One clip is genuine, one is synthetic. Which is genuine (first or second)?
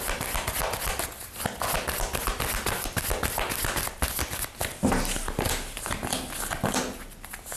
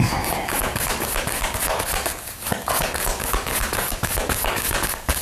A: first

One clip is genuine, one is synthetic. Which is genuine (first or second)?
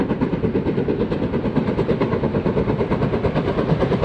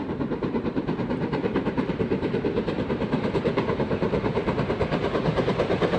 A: first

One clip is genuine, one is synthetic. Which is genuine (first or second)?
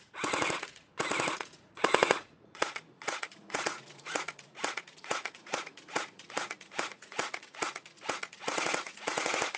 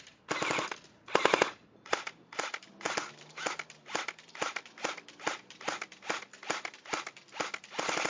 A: second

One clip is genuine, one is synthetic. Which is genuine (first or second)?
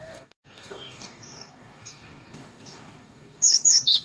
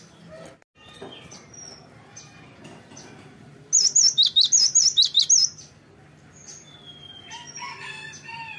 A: second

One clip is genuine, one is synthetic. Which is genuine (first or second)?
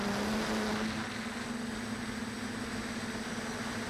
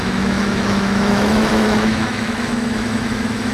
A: first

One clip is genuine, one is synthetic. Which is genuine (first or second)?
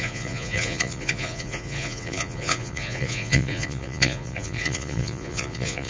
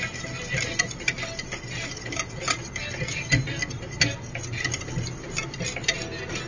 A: second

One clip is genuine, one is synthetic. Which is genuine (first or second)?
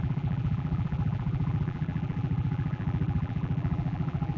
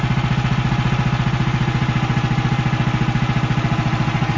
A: second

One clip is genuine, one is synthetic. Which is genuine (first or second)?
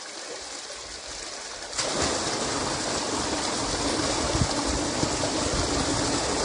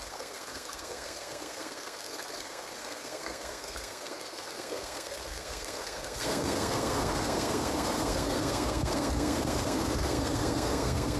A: first